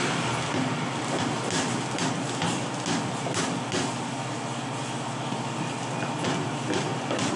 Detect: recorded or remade recorded